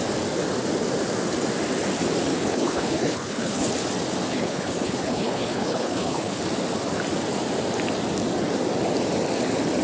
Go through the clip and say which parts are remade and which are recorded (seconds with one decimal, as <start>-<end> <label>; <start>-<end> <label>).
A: 0.0-2.3 recorded; 2.3-3.7 remade; 3.7-4.3 recorded; 4.3-6.4 remade; 6.4-9.8 recorded